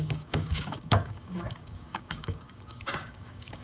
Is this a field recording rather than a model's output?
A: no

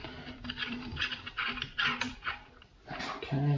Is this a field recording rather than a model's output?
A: no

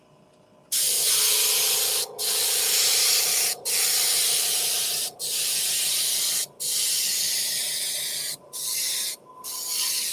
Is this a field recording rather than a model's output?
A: yes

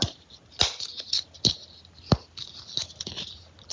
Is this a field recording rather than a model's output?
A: yes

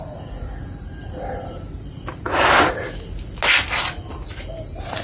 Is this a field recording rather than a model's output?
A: yes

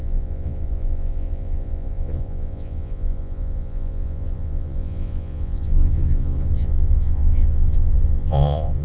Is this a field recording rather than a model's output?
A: no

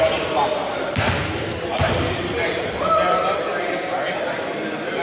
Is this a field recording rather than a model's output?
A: yes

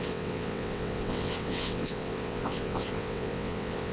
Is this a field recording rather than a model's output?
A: no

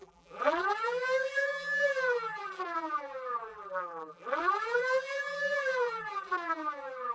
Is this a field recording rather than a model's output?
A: no